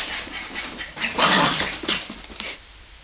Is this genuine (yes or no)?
no